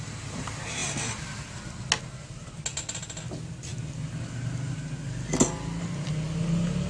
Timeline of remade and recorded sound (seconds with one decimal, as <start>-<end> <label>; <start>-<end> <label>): 0.0-6.9 recorded